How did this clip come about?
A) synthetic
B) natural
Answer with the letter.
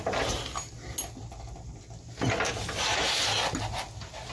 B